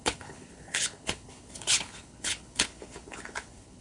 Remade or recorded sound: remade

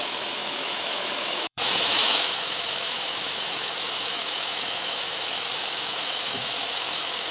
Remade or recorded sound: remade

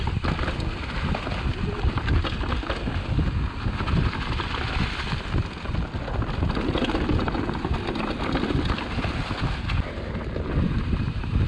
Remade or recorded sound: recorded